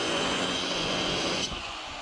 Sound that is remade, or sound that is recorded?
remade